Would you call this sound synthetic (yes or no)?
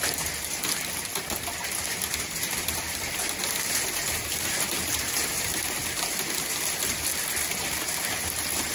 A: no